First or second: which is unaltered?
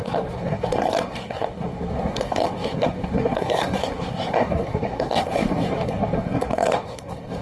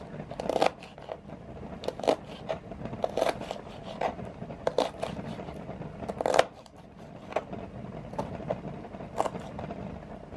second